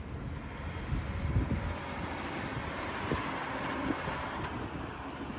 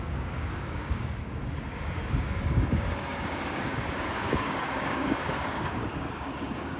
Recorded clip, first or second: first